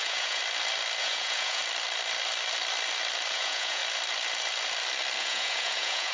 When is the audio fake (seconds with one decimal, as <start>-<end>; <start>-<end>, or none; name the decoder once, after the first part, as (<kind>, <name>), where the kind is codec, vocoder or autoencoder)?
0.0-0.4 (vocoder, Vocos); 1.0-1.6; 3.3-3.8; 5.2-6.1